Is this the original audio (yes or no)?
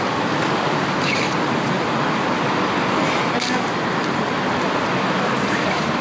yes